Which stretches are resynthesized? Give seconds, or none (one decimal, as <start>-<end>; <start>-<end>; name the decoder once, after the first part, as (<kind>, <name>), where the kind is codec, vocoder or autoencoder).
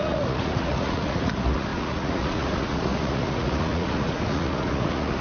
0.0-5.2 (vocoder, Vocos)